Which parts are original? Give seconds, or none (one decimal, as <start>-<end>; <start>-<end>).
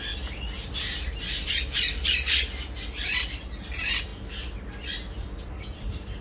0.0-6.2